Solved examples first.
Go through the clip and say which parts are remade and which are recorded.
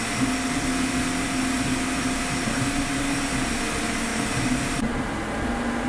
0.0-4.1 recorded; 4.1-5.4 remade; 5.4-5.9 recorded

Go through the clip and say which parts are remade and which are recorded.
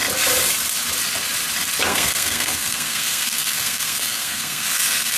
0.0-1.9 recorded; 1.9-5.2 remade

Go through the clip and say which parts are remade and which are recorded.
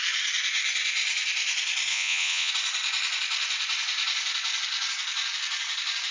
0.0-1.9 recorded; 1.9-2.5 remade; 2.5-6.1 recorded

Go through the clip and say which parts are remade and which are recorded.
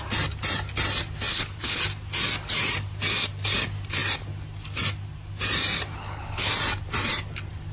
0.0-1.3 recorded; 1.3-1.8 remade; 1.8-6.0 recorded; 6.0-6.5 remade; 6.5-7.7 recorded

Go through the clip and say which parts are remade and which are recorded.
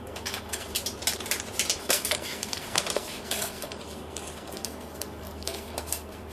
0.0-0.7 remade; 0.7-1.8 recorded; 1.8-6.3 remade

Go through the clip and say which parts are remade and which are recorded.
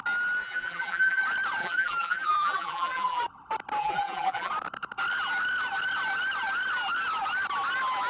0.0-0.4 recorded; 0.4-1.2 remade; 1.2-1.6 recorded; 1.6-3.2 remade; 3.2-3.8 recorded; 3.8-4.5 remade; 4.5-8.1 recorded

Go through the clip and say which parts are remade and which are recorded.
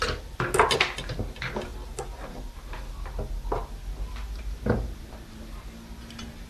0.0-6.5 recorded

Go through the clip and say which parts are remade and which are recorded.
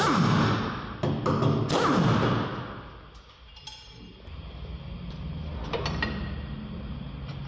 0.0-7.5 recorded